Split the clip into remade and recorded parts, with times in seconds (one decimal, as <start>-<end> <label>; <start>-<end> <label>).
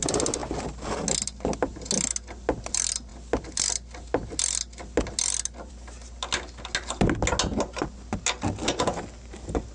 0.0-9.7 recorded